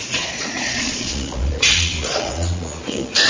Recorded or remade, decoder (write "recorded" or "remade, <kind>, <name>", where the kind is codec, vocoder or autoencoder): remade, vocoder, Vocos